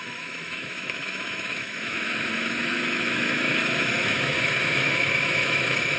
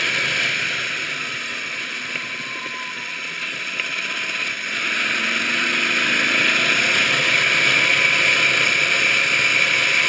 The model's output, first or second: first